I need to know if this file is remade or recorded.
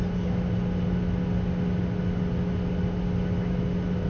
recorded